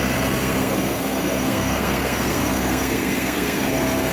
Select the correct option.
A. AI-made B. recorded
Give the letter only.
A